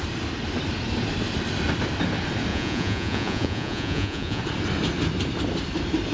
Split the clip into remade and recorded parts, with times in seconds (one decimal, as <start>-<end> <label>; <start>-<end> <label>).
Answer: 0.0-2.5 recorded; 2.5-4.4 remade; 4.4-6.1 recorded

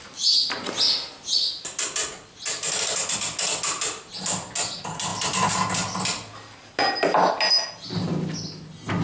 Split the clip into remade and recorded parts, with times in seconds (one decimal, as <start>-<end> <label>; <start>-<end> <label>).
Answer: 0.0-9.0 recorded

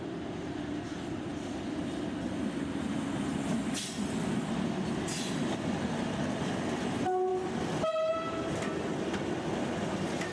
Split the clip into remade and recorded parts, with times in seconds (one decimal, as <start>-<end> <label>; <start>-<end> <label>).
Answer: 0.0-10.3 recorded